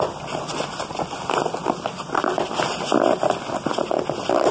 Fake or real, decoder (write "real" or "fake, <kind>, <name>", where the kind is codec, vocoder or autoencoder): real